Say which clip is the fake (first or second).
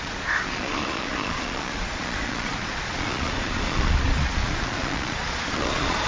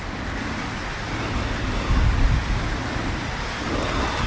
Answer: first